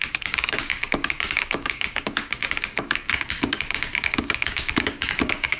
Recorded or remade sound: remade